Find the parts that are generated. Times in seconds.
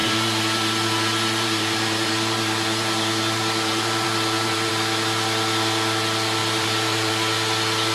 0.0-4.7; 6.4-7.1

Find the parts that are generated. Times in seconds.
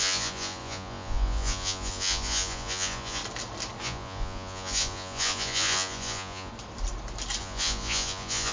0.0-3.2; 3.8-6.5; 7.4-8.5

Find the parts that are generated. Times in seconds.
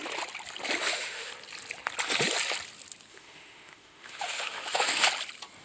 0.8-1.3; 3.1-5.1